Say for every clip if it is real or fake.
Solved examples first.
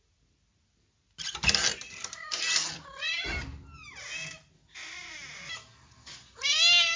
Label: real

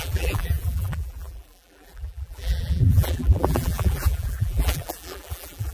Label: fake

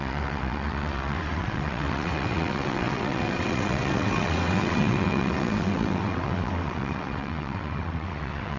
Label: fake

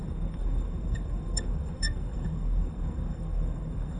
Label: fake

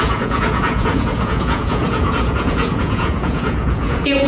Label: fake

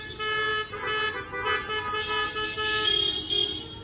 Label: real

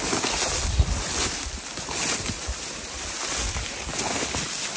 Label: real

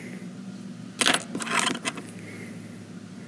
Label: real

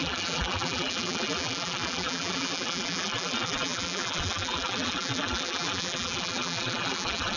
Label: fake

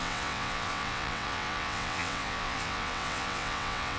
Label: fake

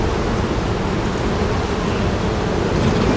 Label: real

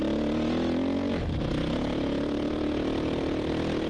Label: real